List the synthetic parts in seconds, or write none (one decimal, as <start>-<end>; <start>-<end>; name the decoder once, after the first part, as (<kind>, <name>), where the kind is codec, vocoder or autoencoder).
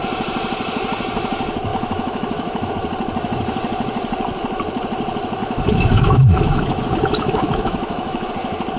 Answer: 1.7-2.7 (autoencoder, DAC-VAE); 5.4-8.3